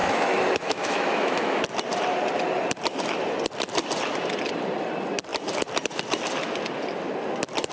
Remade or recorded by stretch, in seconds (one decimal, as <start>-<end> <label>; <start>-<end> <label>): 0.0-1.6 remade; 1.6-7.7 recorded